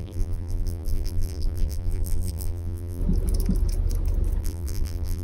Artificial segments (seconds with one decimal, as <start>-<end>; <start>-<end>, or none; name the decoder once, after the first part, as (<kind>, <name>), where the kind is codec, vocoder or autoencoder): 0.0-3.0 (vocoder, BigVGAN v2); 4.4-5.2

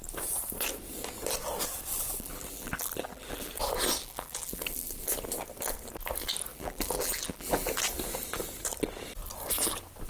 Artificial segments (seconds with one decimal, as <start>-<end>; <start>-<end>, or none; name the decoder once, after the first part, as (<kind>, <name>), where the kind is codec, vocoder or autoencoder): 1.9-3.5 (vocoder, BigVGAN v2); 4.0-5.0; 6.5-7.7

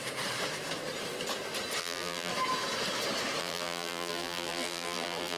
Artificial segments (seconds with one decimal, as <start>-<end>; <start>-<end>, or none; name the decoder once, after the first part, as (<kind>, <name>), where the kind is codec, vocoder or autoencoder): 1.8-2.3 (vocoder, BigVGAN v2); 3.4-5.4

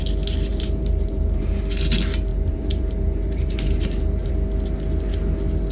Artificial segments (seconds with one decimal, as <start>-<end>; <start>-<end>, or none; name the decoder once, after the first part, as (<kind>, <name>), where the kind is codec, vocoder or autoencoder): 0.5-1.5 (vocoder, BigVGAN v2); 2.3-4.3